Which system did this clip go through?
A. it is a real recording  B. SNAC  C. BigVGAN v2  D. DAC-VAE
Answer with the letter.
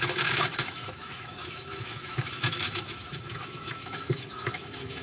D